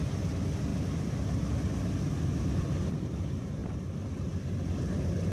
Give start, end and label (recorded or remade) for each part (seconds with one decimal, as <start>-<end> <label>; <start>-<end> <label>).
0.0-5.3 remade